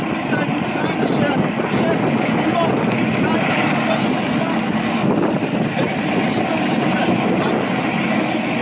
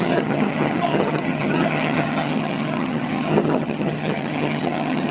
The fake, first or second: second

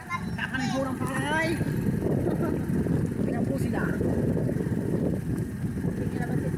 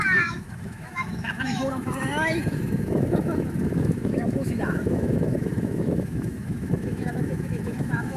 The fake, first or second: second